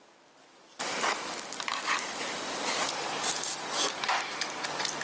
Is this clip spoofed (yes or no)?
no